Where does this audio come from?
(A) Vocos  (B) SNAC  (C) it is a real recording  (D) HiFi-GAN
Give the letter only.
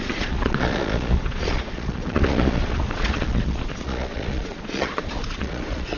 A